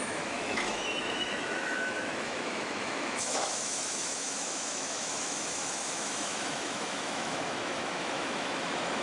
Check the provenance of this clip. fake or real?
fake